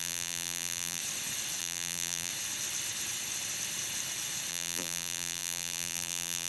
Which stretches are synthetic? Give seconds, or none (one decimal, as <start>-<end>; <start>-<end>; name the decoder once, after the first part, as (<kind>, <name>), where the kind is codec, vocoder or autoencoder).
0.0-1.0 (vocoder, BigVGAN v2); 1.6-2.3; 4.5-6.5